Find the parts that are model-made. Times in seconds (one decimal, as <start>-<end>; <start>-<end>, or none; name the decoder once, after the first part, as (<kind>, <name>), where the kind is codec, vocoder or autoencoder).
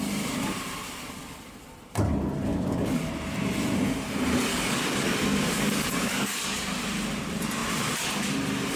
2.5-3.1 (codec, DAC); 4.5-6.4